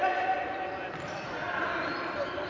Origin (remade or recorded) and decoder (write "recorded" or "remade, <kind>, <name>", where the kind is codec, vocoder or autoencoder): recorded